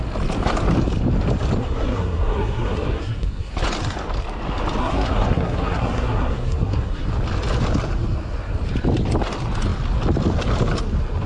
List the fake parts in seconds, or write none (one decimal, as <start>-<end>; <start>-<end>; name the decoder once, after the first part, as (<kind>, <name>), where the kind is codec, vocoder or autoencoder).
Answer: 1.6-3.5 (codec, SNAC); 4.8-7.1